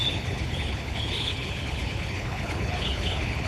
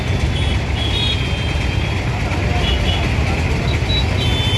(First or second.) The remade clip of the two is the first